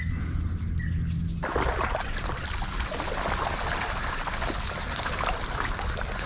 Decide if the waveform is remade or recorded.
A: recorded